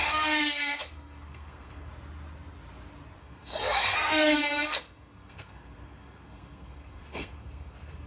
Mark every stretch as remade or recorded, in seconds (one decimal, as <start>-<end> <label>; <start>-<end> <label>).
0.0-1.9 remade; 1.9-3.2 recorded; 3.2-8.1 remade